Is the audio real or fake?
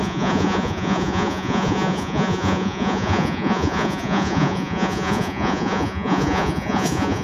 fake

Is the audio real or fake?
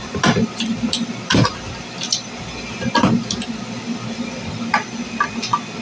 real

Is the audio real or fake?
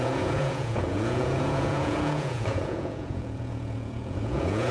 fake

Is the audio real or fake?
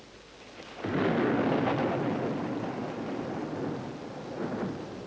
real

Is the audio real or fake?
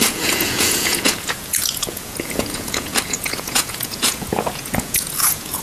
fake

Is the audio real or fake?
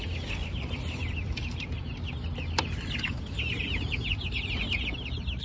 real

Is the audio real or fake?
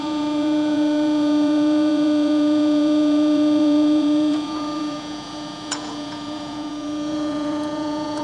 fake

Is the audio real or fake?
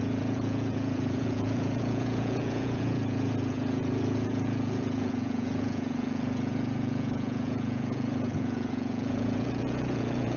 fake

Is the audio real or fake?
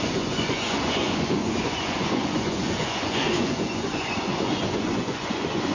fake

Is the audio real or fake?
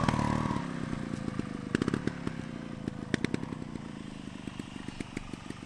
real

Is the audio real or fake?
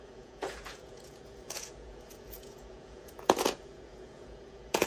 fake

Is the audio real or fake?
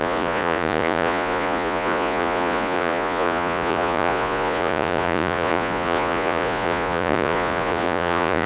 fake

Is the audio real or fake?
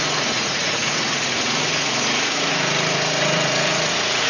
fake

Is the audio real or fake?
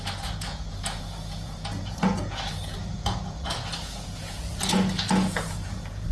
fake